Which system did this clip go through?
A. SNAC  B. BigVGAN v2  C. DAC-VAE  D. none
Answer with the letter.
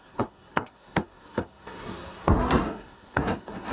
A